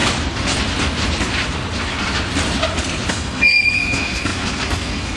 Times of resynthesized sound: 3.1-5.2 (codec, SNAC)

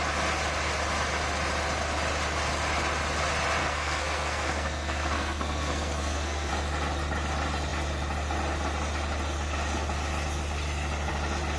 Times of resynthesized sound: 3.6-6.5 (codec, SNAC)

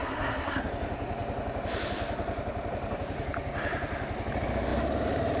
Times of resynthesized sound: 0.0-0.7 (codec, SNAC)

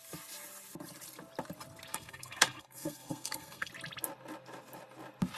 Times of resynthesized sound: 1.9-3.7 (codec, SNAC)

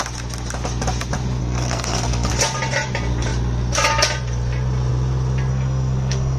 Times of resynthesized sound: 1.4-2.3 (codec, SNAC); 5.5-6.4

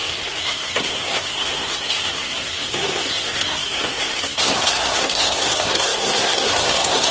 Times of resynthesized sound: 0.0-7.1 (codec, SNAC)